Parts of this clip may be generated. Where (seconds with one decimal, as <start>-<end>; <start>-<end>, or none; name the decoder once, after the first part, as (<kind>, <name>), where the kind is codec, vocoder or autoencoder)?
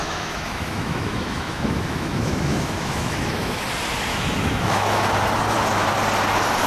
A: 0.0-3.6 (autoencoder, DAC-VAE); 4.1-5.1